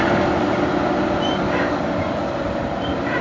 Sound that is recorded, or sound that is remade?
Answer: remade